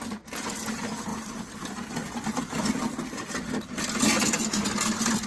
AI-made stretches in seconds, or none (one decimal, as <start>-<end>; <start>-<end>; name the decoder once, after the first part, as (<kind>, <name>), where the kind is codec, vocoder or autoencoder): none